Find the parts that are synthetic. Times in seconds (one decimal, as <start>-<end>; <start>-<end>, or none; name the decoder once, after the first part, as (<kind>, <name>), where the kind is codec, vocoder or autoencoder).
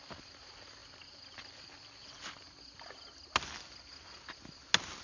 none